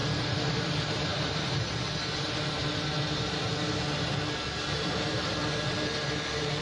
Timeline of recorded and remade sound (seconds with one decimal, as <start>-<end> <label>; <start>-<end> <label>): 0.0-2.6 remade; 2.6-4.9 recorded; 4.9-5.4 remade; 5.4-6.6 recorded